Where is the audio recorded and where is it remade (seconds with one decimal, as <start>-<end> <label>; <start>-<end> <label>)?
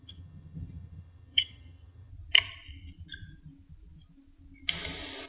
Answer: 0.0-2.1 remade; 2.1-5.3 recorded